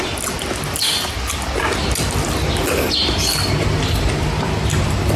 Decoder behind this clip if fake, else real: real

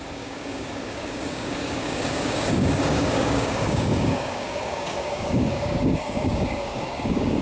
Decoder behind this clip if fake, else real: fake, codec, DAC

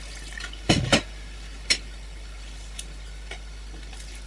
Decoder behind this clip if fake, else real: real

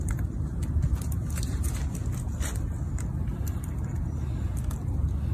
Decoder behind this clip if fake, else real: real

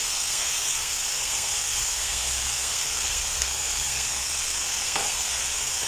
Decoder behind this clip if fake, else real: fake, codec, SNAC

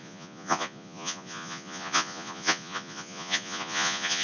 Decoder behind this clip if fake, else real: fake, vocoder, Vocos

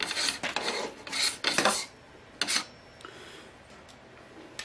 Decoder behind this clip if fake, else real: real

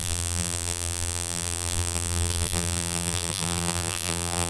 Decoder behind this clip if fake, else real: fake, vocoder, BigVGAN v2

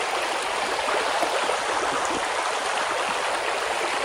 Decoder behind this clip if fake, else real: real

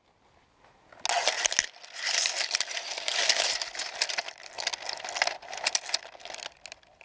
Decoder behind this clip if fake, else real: real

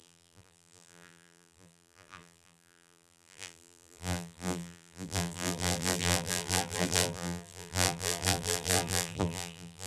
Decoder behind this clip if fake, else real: fake, vocoder, BigVGAN v2